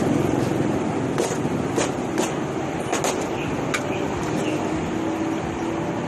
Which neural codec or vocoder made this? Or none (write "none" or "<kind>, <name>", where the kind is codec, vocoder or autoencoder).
none